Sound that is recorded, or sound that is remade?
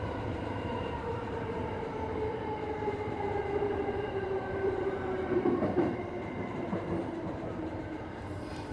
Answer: remade